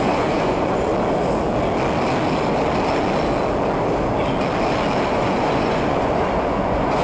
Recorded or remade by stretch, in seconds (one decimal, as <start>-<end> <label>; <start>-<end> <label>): 0.0-0.9 remade; 0.9-5.1 recorded; 5.1-7.0 remade